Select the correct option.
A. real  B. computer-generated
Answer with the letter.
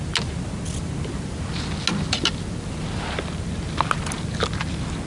A